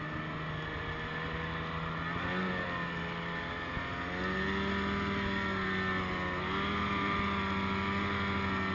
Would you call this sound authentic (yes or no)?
yes